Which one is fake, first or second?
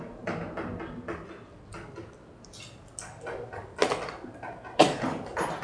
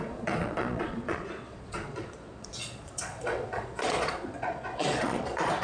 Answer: second